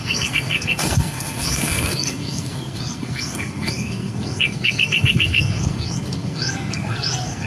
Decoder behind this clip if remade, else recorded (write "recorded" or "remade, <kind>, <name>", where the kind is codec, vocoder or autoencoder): remade, codec, SNAC